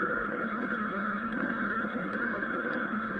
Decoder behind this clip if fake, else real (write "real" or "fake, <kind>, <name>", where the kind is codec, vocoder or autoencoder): fake, codec, SNAC